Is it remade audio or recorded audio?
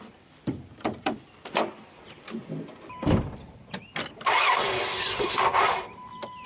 remade